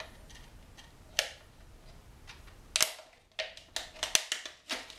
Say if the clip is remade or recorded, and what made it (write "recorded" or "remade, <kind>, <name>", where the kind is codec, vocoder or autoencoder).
recorded